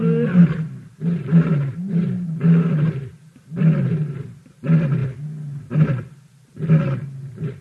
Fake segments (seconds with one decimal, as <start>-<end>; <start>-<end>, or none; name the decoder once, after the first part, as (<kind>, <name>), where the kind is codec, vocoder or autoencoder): 0.4-3.1 (vocoder, BigVGAN v2)